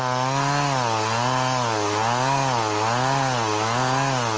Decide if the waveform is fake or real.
real